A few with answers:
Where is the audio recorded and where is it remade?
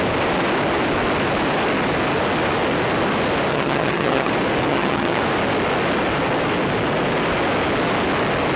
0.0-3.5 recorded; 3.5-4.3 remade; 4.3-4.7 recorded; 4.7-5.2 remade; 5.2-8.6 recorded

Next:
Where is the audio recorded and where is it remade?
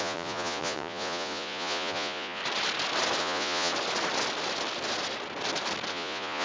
0.0-2.4 remade; 2.4-3.2 recorded; 3.2-3.7 remade; 3.7-5.9 recorded; 5.9-6.4 remade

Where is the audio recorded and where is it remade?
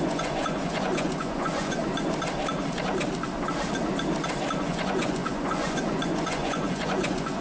0.0-1.8 remade; 1.8-4.6 recorded; 4.6-7.4 remade